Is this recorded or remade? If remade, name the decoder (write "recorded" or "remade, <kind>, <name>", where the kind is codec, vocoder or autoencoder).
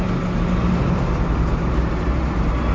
remade, vocoder, BigVGAN v2